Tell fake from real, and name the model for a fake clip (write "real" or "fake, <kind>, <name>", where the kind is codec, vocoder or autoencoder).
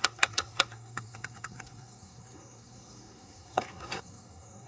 fake, codec, SNAC